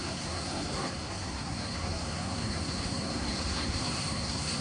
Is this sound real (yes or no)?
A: no